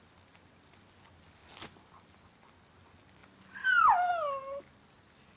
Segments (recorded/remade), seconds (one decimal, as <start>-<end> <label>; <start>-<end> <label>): 0.0-5.4 recorded